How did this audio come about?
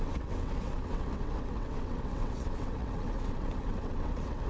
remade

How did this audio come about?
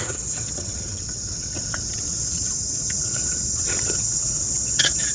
remade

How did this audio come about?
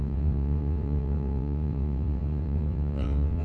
remade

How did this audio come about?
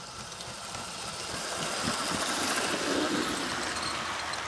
recorded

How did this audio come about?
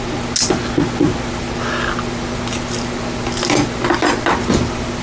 recorded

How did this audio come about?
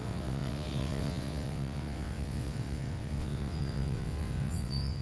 remade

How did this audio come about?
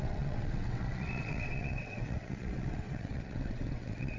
remade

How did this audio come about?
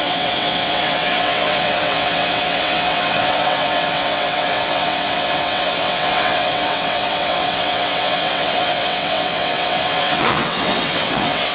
remade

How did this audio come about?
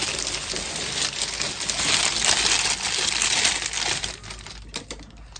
recorded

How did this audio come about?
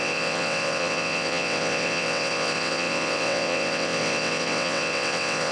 remade